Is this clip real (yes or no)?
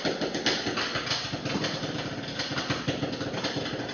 yes